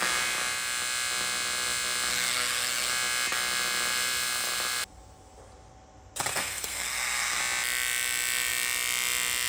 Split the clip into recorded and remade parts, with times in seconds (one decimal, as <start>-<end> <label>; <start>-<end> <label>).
0.0-2.1 recorded; 2.1-2.9 remade; 2.9-6.3 recorded; 6.3-7.4 remade; 7.4-9.5 recorded